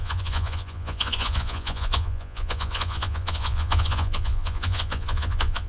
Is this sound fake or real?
fake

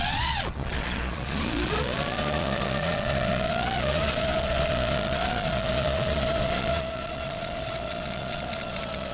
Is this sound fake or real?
fake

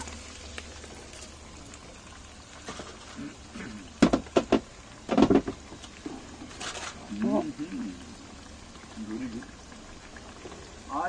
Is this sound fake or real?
real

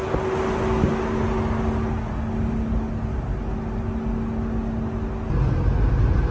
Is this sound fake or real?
real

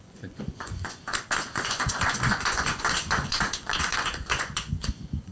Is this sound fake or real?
fake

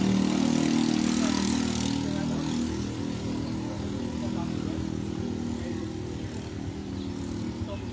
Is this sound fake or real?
real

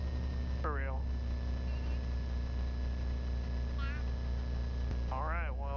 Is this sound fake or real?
real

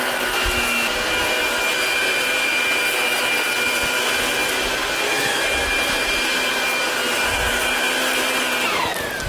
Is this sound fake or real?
real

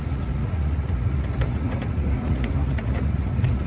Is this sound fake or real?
fake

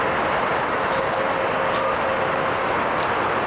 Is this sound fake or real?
real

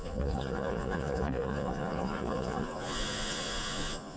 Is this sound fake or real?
fake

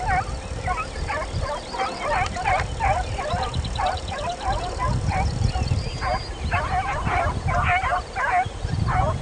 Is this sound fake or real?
real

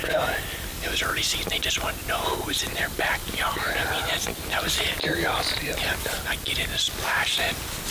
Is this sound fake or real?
real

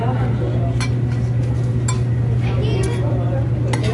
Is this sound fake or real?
real